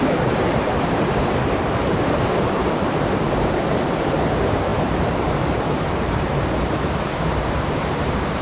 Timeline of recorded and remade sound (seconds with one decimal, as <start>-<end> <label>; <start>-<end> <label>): 0.0-8.4 remade